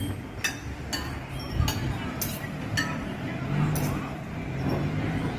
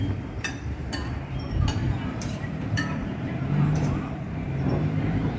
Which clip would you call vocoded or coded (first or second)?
second